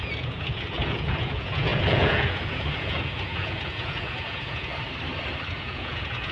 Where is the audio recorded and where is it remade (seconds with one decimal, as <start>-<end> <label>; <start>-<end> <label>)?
0.0-4.7 remade; 4.7-5.6 recorded; 5.6-6.3 remade